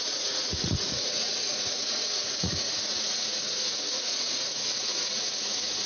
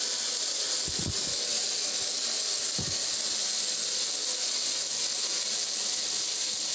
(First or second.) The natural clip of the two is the second